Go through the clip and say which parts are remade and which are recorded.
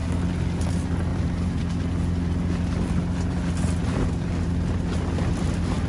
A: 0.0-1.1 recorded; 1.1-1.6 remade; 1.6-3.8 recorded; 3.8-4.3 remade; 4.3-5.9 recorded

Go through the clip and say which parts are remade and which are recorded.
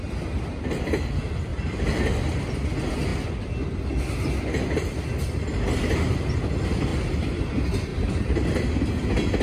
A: 0.0-1.5 recorded; 1.5-2.0 remade; 2.0-6.9 recorded; 6.9-7.5 remade; 7.5-7.9 recorded; 7.9-8.5 remade; 8.5-9.4 recorded